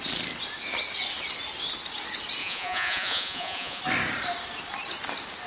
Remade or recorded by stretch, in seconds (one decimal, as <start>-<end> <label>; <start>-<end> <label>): 0.0-2.4 recorded; 2.4-3.8 remade; 3.8-5.5 recorded